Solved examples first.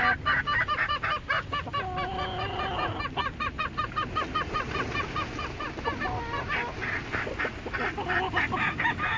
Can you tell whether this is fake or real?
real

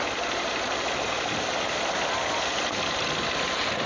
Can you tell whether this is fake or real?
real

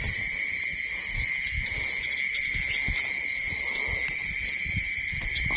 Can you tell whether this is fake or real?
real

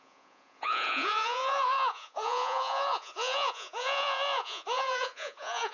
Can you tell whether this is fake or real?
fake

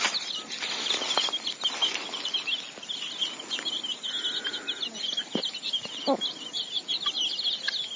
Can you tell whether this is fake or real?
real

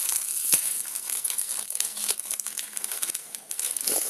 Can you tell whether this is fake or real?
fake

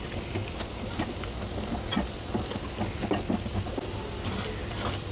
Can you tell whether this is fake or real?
real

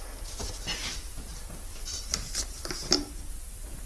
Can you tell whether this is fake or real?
real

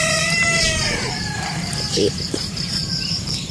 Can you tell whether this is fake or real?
fake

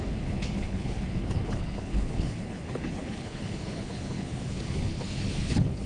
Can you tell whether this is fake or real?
fake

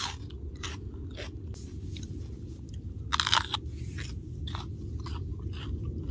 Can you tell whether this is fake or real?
real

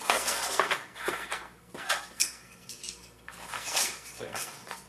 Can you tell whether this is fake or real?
fake